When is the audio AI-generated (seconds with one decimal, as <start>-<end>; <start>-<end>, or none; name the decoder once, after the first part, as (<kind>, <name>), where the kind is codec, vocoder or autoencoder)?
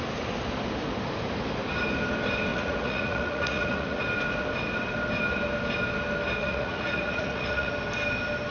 2.5-4.0 (vocoder, Vocos); 6.4-7.7